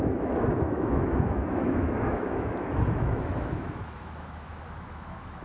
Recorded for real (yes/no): no